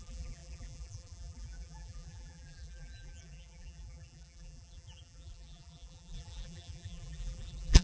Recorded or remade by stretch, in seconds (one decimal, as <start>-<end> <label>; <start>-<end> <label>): 0.0-7.8 remade

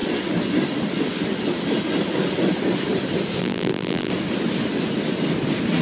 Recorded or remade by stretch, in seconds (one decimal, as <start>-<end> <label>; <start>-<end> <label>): 0.0-3.4 recorded; 3.4-4.1 remade; 4.1-5.8 recorded

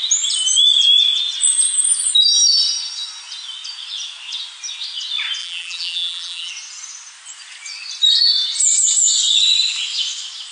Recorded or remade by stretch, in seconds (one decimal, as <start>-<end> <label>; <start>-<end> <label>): 0.0-5.4 recorded; 5.4-6.5 remade; 6.5-10.5 recorded

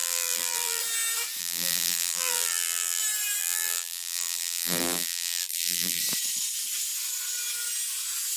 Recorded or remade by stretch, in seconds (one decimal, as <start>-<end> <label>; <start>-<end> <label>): 0.0-0.8 remade; 0.8-1.4 recorded; 1.4-3.0 remade; 3.0-3.4 recorded; 3.4-6.0 remade; 6.0-8.4 recorded

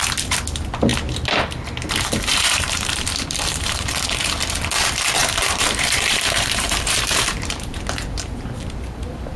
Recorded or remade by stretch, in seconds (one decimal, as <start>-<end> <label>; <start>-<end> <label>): 0.0-2.3 recorded; 2.3-4.1 remade; 4.1-5.2 recorded; 5.2-8.0 remade; 8.0-9.4 recorded

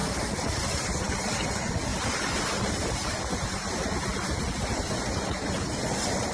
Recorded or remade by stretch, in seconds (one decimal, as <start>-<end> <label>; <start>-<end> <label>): 0.0-1.0 remade; 1.0-1.9 recorded; 1.9-2.9 remade; 2.9-6.3 recorded

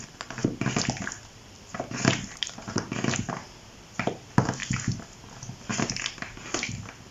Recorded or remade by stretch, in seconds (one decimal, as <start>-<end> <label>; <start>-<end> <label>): 0.0-4.6 remade; 4.6-7.1 recorded

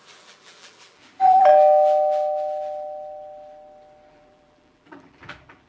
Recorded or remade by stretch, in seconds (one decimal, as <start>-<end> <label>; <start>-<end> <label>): 0.0-1.5 remade; 1.5-4.1 recorded; 4.1-5.7 remade